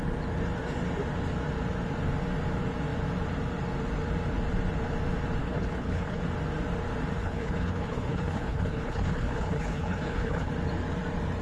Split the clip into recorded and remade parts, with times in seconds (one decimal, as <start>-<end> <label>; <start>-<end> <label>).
0.0-5.4 recorded; 5.4-6.2 remade; 6.2-7.2 recorded; 7.2-10.5 remade; 10.5-11.4 recorded